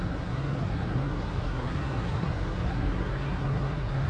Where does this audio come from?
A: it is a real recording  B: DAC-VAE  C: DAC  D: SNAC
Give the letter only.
D